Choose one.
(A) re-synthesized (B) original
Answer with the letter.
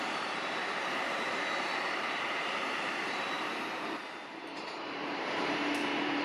A